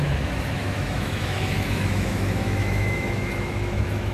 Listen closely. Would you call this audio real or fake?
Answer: fake